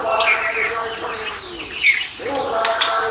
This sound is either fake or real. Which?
real